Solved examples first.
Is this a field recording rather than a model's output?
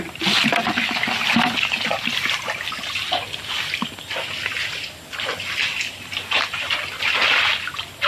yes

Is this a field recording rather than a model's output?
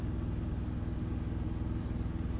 yes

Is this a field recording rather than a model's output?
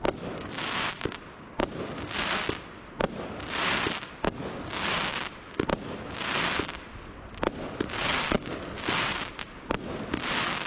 yes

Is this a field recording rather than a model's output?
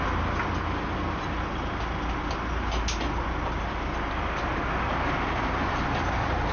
yes